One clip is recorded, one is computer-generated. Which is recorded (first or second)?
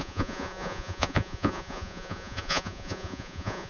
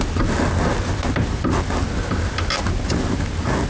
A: second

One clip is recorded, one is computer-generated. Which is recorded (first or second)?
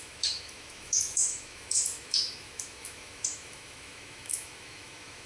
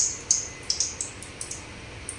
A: second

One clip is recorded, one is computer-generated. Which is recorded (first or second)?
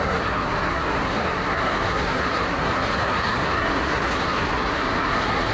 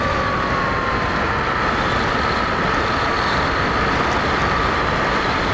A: second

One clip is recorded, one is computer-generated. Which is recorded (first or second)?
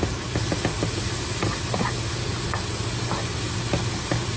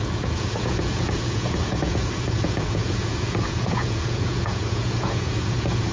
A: first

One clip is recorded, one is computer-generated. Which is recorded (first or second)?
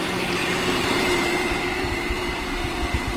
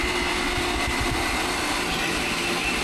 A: second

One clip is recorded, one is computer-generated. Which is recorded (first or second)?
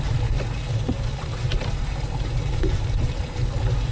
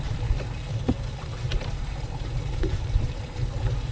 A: first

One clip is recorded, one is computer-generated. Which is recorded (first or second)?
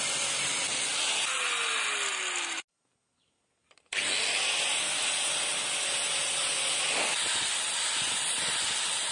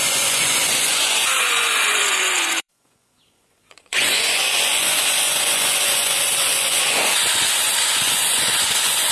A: first